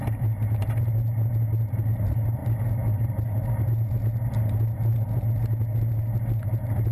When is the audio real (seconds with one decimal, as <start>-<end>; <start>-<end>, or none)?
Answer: 0.0-6.9